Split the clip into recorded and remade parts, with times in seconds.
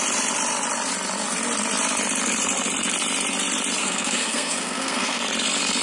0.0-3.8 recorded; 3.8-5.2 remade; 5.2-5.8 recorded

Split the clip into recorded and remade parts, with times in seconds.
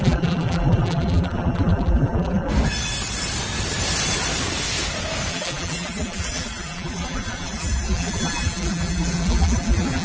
0.0-2.5 remade; 2.5-5.3 recorded; 5.3-10.0 remade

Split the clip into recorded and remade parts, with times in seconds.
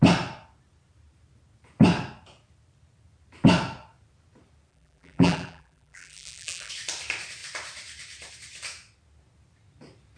0.0-4.7 recorded; 4.7-6.7 remade; 6.7-10.2 recorded